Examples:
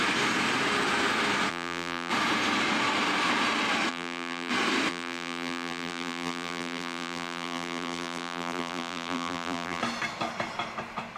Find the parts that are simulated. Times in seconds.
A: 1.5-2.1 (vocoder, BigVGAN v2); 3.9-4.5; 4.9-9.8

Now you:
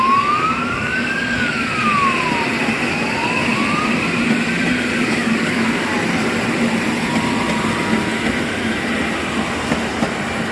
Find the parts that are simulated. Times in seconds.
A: 0.0-1.7 (codec, DAC); 2.7-3.5; 4.9-5.9

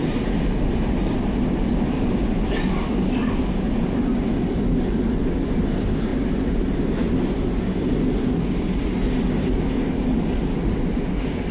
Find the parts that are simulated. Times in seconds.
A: none

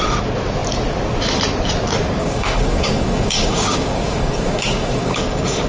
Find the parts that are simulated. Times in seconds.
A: 2.2-5.7 (codec, DAC)

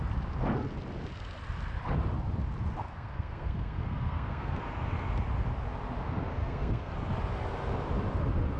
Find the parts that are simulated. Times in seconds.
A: 2.8-4.6 (codec, SNAC); 6.4-6.9

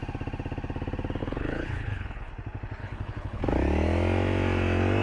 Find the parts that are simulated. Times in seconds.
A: 1.2-2.3 (codec, HILCodec); 2.8-3.4